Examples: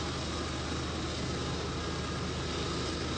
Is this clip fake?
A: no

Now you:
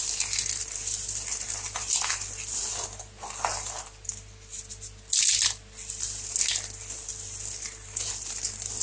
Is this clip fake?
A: no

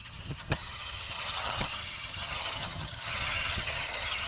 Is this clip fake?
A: yes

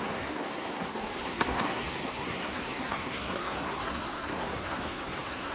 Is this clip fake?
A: yes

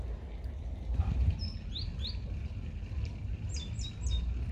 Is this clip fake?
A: no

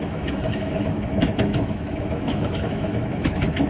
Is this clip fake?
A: yes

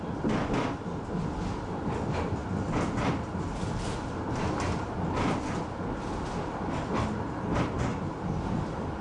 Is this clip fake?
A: no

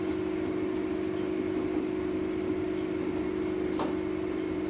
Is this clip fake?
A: no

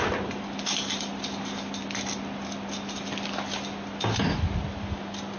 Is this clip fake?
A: no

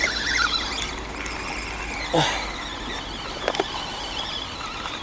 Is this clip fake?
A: no